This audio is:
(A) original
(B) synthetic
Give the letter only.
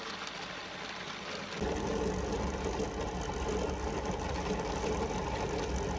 A